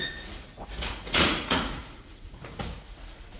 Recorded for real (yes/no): no